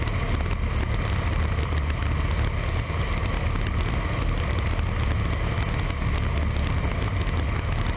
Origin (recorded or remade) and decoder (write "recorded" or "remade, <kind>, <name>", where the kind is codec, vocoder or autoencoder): recorded